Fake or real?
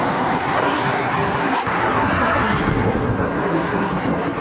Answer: fake